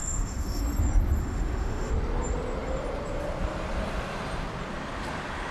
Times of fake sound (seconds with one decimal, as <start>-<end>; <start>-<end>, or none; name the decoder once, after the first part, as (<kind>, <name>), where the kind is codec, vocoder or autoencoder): 0.0-0.6 (autoencoder, DAC-VAE); 1.2-1.9